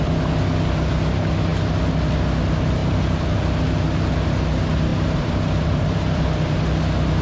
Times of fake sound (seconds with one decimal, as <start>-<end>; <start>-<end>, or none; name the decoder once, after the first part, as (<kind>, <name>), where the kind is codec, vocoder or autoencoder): 2.8-3.4 (vocoder, BigVGAN v2); 4.9-7.2